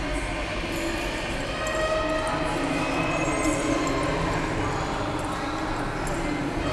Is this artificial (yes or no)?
no